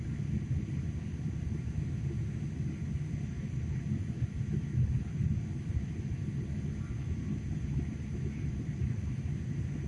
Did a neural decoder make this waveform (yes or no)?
no